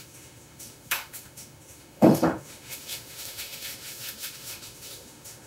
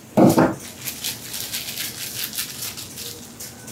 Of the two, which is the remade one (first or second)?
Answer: first